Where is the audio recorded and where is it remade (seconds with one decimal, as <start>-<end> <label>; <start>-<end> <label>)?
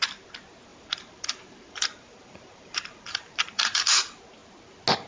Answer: 0.0-0.7 recorded; 0.7-3.8 remade; 3.8-5.1 recorded